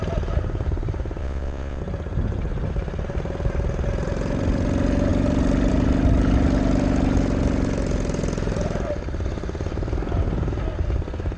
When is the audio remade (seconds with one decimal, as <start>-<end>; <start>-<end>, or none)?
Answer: 1.2-1.8